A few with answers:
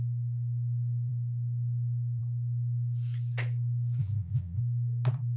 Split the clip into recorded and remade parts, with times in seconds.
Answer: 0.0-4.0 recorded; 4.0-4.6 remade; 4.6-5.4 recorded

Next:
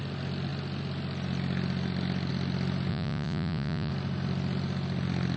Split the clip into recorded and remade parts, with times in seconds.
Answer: 0.0-2.9 recorded; 2.9-3.9 remade; 3.9-5.4 recorded

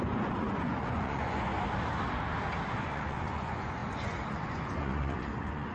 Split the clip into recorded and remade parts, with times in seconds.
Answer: 0.0-1.5 remade; 1.5-2.8 recorded; 2.8-5.7 remade

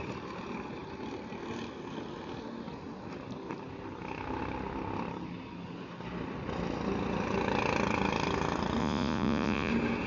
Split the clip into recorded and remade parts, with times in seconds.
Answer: 0.0-8.8 recorded; 8.8-9.7 remade; 9.7-10.1 recorded

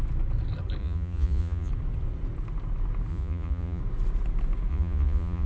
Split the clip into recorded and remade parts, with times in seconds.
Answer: 0.0-0.8 recorded; 0.8-1.7 remade; 1.7-3.1 recorded; 3.1-3.8 remade; 3.8-4.7 recorded; 4.7-5.5 remade

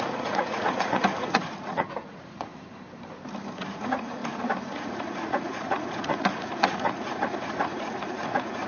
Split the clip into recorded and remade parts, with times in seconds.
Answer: 0.0-2.5 remade; 2.5-3.6 recorded; 3.6-4.2 remade; 4.2-4.7 recorded; 4.7-8.7 remade

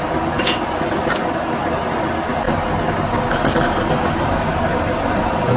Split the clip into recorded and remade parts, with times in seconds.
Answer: 0.0-5.6 recorded